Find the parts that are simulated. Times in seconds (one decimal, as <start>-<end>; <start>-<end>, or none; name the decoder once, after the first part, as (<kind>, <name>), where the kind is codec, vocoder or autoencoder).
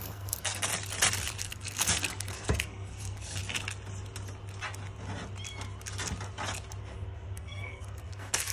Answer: 0.0-0.7 (codec, SNAC); 1.4-3.4; 6.8-8.5